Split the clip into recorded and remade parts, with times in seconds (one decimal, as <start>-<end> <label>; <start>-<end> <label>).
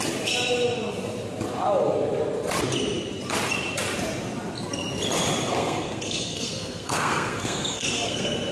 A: 0.0-5.5 recorded; 5.5-8.5 remade